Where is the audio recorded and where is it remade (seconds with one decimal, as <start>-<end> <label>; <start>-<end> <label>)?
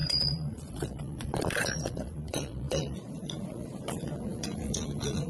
0.0-5.3 remade